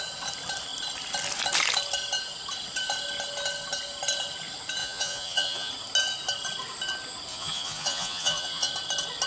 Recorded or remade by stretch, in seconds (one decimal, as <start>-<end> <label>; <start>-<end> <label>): 0.0-4.8 recorded; 4.8-5.7 remade; 5.7-7.3 recorded; 7.3-8.7 remade; 8.7-9.3 recorded